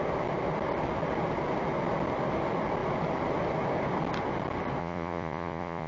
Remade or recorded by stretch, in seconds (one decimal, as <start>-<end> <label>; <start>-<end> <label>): 0.0-4.8 recorded; 4.8-5.9 remade